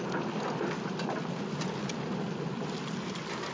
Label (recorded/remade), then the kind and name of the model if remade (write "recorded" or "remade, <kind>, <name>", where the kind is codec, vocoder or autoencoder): recorded